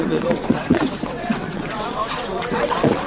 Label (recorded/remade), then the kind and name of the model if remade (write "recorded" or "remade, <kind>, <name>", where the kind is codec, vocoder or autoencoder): remade, vocoder, WaveNeXt